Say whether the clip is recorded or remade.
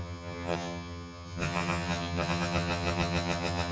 remade